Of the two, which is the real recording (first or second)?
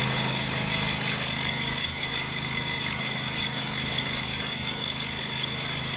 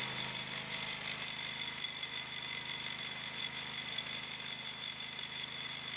second